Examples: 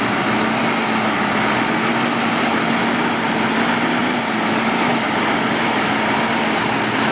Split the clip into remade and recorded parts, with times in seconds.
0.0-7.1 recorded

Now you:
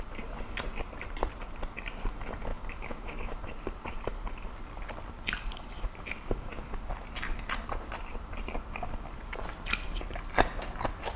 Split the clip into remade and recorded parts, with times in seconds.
0.0-2.5 recorded; 2.5-3.4 remade; 3.4-11.2 recorded

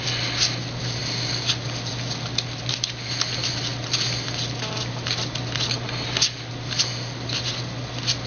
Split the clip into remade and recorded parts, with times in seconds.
0.0-1.0 recorded; 1.0-1.9 remade; 1.9-8.3 recorded